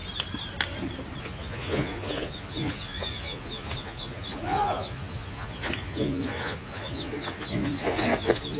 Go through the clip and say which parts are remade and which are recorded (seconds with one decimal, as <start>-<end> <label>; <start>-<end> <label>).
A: 0.0-1.2 recorded; 1.2-8.6 remade